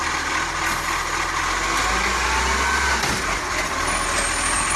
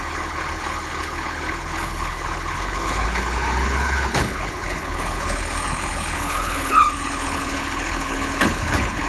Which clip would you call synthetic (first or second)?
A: second